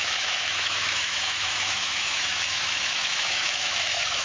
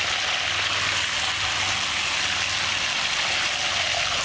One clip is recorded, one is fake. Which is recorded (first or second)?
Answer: second